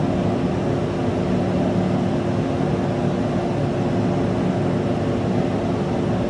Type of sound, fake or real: real